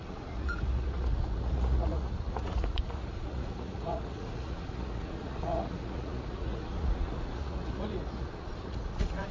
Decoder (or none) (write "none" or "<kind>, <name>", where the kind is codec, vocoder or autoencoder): vocoder, Vocos